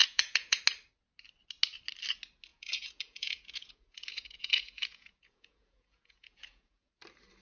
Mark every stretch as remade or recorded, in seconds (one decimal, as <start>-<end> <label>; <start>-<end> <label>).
0.0-0.6 remade; 0.6-2.5 recorded; 2.5-6.9 remade; 6.9-7.4 recorded